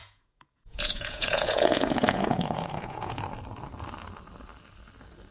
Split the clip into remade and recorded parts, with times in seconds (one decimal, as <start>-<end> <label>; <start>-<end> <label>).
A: 0.0-3.2 remade; 3.2-5.3 recorded